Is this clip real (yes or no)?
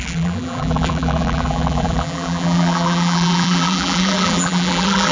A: no